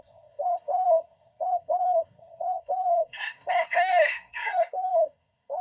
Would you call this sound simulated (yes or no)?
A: yes